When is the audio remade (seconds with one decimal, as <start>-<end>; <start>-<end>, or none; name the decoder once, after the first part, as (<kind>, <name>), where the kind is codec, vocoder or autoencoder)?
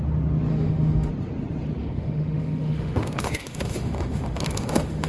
0.5-1.1 (autoencoder, DAC-VAE); 1.8-5.1